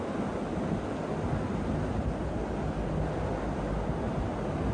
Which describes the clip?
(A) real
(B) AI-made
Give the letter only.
A